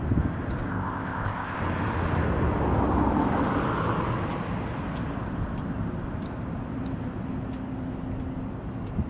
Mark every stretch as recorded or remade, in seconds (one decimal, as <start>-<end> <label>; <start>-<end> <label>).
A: 0.0-0.7 recorded; 0.7-1.6 remade; 1.6-9.1 recorded